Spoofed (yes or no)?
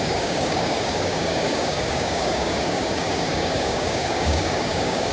yes